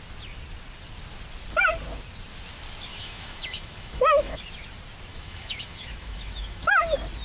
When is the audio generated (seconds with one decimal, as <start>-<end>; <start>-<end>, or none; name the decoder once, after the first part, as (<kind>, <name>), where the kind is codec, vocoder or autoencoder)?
2.9-4.4 (autoencoder, DAC-VAE); 5.1-6.8